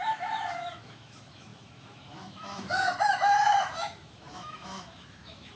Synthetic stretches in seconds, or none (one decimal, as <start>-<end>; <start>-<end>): 0.0-5.6